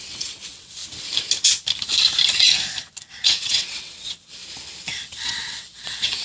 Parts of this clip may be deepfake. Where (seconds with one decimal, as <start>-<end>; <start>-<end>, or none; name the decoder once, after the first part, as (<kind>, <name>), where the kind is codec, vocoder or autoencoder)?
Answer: 0.0-0.8 (vocoder, WaveNeXt); 3.1-4.4; 5.1-6.2